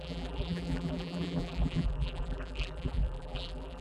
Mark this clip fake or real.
fake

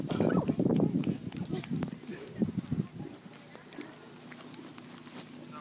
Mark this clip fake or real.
real